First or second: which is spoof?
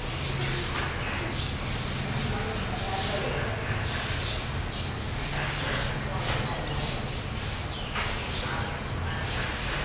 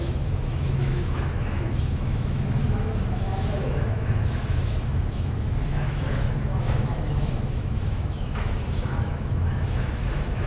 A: second